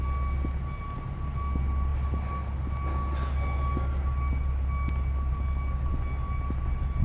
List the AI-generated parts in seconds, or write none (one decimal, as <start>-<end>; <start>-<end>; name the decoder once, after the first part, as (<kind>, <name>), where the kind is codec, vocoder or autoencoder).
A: none